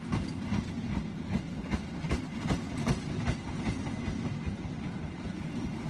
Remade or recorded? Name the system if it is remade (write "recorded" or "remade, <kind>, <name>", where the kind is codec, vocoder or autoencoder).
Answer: recorded